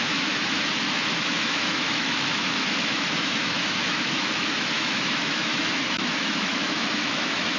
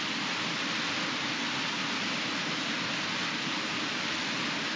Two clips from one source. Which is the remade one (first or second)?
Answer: first